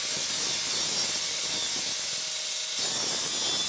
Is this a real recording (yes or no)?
yes